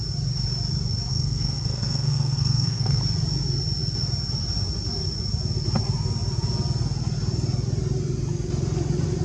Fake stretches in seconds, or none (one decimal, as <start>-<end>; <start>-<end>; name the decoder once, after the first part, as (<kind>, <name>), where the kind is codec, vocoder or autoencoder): 1.1-3.0 (codec, SNAC)